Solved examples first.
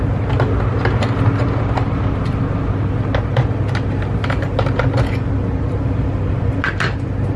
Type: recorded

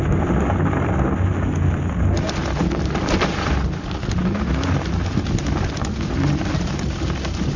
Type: recorded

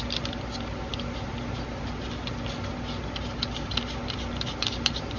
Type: recorded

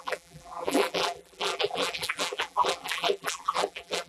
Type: remade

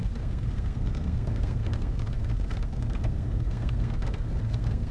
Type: remade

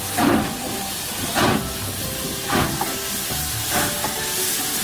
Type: recorded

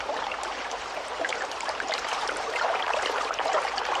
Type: remade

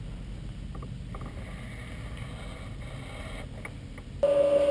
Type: recorded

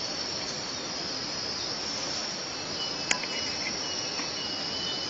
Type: recorded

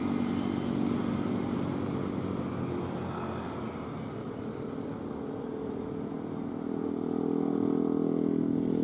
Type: recorded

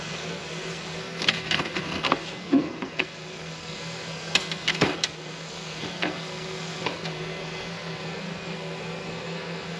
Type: remade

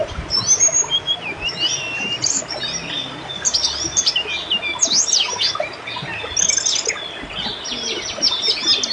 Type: recorded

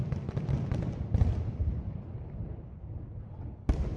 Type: remade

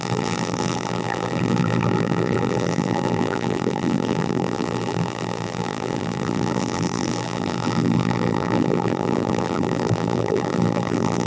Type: remade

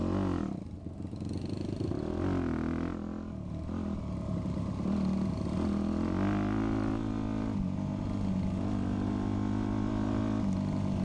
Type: recorded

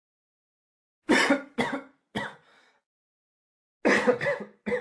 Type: recorded